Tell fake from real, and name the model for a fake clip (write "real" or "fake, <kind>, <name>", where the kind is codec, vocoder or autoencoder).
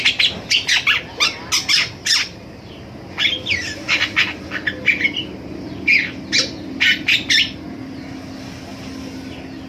real